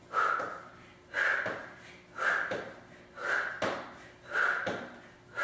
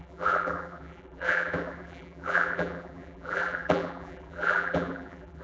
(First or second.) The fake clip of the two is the second